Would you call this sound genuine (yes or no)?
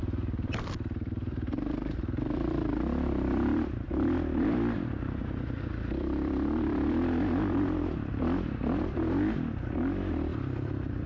no